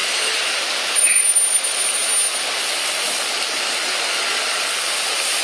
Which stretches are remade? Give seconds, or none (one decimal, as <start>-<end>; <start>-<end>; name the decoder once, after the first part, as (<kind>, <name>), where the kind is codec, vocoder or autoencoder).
0.0-0.6 (vocoder, BigVGAN v2)